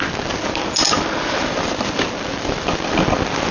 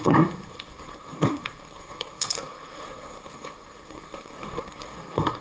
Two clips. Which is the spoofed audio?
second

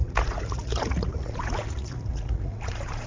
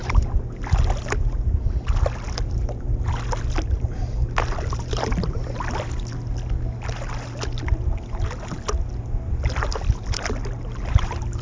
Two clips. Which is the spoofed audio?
first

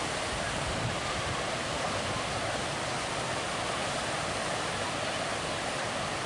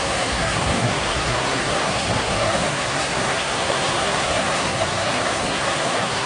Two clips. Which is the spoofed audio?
second